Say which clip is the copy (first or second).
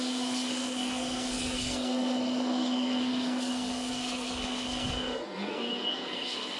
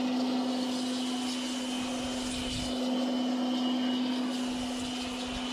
first